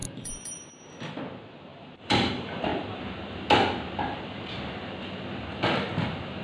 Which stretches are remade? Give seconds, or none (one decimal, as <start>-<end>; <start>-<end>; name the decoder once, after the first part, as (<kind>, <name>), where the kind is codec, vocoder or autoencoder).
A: 0.0-0.6 (vocoder, BigVGAN v2); 1.7-2.3; 2.7-3.3